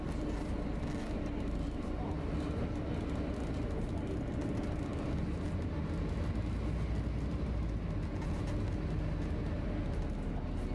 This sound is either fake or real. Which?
real